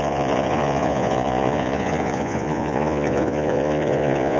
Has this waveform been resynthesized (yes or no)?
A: yes